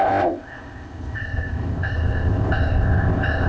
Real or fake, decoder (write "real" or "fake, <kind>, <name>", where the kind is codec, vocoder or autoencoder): fake, codec, ZipCodec